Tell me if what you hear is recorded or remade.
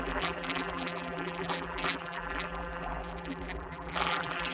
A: remade